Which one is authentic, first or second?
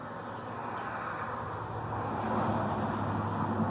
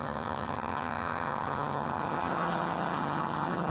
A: first